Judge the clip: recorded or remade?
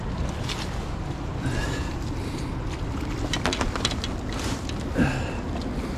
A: recorded